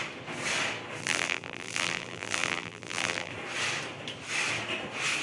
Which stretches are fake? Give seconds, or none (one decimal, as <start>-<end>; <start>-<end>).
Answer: 1.0-3.3